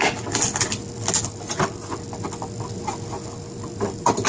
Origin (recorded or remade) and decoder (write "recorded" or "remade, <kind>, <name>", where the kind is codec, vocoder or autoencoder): recorded